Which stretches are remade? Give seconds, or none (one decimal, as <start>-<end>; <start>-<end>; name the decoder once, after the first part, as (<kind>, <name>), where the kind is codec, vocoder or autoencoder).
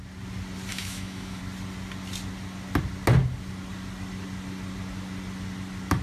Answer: 0.7-1.4 (autoencoder, DAC-VAE)